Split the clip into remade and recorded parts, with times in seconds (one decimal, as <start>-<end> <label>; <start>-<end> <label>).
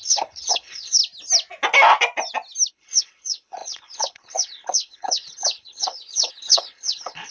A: 0.0-1.0 remade; 1.0-2.7 recorded; 2.7-7.3 remade